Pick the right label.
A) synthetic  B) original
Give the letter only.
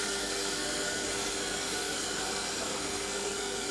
A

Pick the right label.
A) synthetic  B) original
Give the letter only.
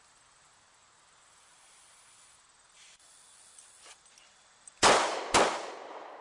B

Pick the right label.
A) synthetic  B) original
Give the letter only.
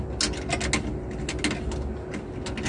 B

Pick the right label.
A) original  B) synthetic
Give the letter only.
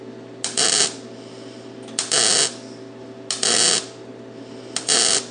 A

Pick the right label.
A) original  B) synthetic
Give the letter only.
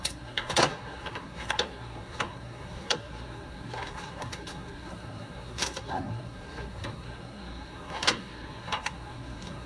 B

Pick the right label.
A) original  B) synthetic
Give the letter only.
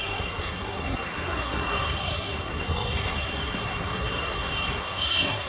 B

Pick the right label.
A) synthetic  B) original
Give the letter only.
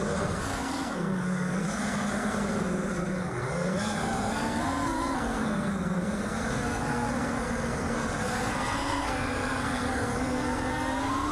A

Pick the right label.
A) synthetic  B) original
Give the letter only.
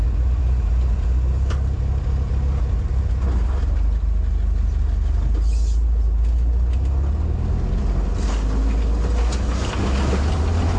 B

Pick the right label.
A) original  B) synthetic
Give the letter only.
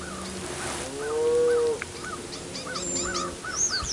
A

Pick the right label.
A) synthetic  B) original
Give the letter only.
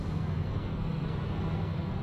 A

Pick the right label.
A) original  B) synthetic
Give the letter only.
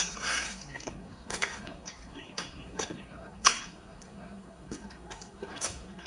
B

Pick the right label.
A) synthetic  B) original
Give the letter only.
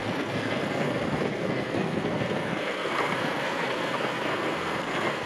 A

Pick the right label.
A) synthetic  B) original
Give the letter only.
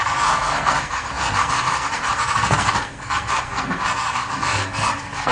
A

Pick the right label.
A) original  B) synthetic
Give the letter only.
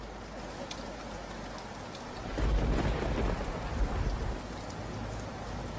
A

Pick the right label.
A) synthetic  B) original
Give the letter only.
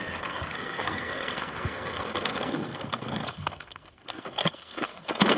A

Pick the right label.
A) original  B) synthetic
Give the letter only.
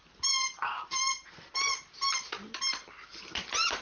A